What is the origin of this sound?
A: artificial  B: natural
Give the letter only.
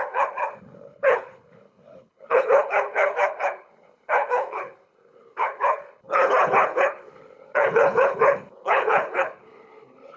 A